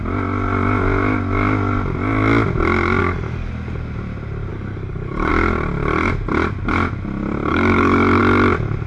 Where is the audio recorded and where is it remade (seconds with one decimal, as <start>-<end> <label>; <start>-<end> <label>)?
0.0-3.0 recorded; 3.0-3.5 remade; 3.5-4.5 recorded; 4.5-5.3 remade; 5.3-7.5 recorded; 7.5-8.2 remade; 8.2-8.9 recorded